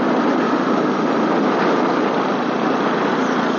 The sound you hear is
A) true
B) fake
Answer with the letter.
A